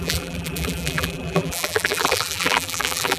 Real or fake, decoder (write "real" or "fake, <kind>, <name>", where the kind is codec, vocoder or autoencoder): fake, vocoder, BigVGAN v2